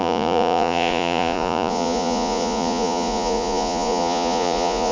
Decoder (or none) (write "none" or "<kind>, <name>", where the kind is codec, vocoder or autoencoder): vocoder, Vocos